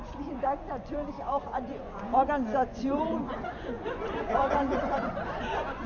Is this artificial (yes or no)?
yes